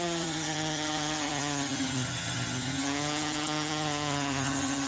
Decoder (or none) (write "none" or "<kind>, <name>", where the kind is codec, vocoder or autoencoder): vocoder, HiFi-GAN